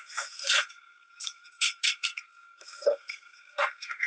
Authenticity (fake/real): fake